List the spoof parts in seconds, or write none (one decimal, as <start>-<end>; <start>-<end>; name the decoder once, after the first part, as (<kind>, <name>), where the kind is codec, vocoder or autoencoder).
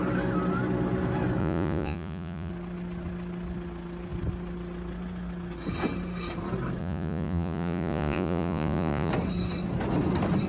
1.4-2.5 (vocoder, Vocos); 6.8-9.1